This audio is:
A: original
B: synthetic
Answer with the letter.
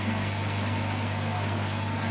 B